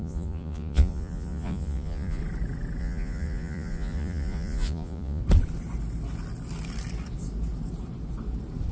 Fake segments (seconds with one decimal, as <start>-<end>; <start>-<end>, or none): 0.0-2.2; 2.8-5.2